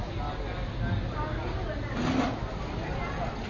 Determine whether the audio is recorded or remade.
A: recorded